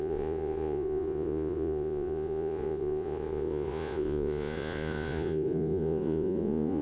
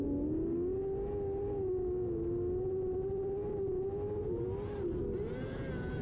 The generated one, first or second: first